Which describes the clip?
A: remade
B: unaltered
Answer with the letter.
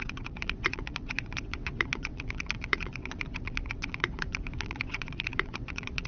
A